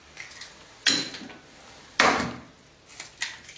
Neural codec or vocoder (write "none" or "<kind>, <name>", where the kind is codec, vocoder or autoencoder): none